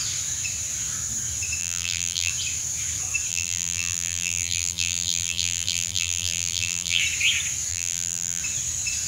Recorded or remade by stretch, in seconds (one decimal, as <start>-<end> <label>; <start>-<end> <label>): 0.0-1.6 recorded; 1.6-2.3 remade; 2.3-3.3 recorded; 3.3-7.0 remade; 7.0-7.7 recorded; 7.7-8.4 remade; 8.4-9.1 recorded